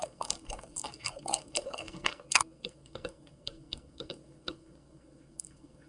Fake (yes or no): yes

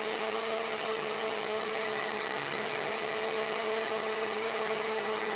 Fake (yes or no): yes